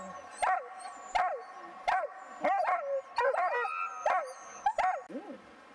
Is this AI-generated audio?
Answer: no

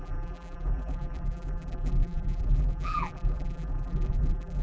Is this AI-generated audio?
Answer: yes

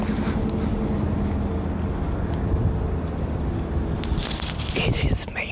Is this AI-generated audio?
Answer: no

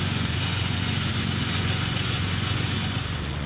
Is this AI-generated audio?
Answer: yes